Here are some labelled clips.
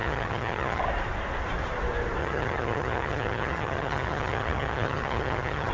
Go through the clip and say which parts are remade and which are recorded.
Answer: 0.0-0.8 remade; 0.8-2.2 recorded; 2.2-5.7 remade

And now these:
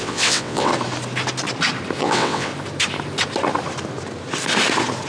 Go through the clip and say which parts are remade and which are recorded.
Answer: 0.0-0.7 remade; 0.7-2.0 recorded; 2.0-2.5 remade; 2.5-5.1 recorded

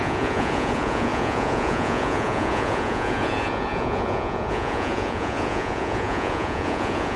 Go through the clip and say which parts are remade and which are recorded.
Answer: 0.0-7.2 remade

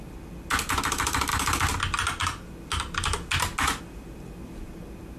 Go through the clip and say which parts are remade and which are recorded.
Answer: 0.0-5.2 recorded

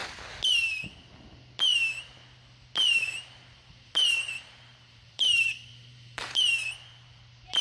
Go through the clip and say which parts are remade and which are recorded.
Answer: 0.0-3.7 recorded; 3.7-7.6 remade